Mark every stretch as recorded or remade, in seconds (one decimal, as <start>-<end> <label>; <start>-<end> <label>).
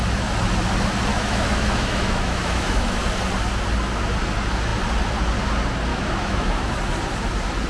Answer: 0.0-1.1 recorded; 1.1-3.0 remade; 3.0-5.9 recorded; 5.9-6.7 remade; 6.7-7.7 recorded